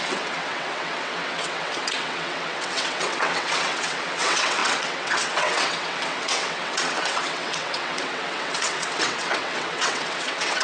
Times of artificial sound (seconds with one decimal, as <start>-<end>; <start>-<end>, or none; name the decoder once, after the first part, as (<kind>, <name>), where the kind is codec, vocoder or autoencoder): 0.0-10.6 (vocoder, WaveNeXt)